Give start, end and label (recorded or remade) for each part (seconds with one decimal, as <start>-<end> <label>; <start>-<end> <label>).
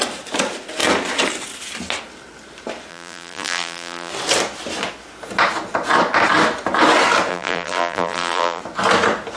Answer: 0.0-2.9 recorded; 2.9-4.1 remade; 4.1-7.3 recorded; 7.3-8.6 remade; 8.6-9.4 recorded